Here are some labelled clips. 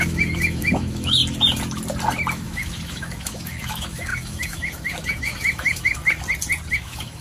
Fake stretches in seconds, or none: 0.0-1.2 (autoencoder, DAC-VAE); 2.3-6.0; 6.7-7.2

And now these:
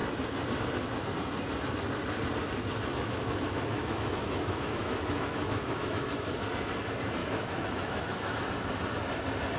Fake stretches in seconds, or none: 2.9-6.0 (autoencoder, DAC-VAE); 7.2-8.5

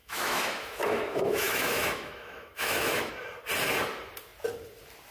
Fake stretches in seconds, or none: 0.0-3.1 (autoencoder, DAC-VAE)

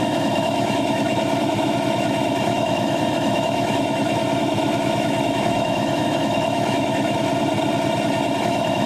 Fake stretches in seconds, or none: 0.0-7.3 (autoencoder, DAC-VAE); 8.4-8.9

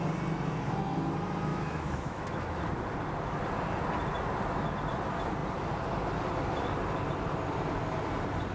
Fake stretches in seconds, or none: 1.5-2.6 (autoencoder, DAC-VAE)